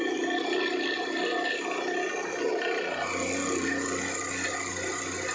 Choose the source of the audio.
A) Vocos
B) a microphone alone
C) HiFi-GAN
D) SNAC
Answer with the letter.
B